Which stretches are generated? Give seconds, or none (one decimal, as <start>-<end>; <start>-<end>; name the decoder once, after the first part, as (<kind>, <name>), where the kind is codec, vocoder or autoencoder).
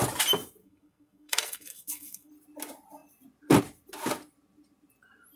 0.6-2.3 (codec, SNAC)